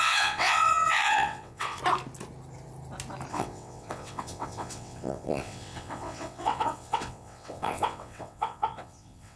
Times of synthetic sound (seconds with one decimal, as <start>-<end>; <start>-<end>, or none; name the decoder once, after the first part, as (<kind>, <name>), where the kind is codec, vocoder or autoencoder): 0.0-1.8 (vocoder, WaveNeXt); 3.3-9.4